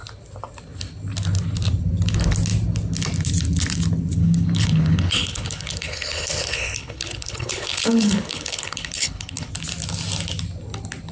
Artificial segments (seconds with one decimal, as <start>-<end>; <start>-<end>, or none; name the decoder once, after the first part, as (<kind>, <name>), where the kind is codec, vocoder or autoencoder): 4.2-9.5 (codec, HILCodec)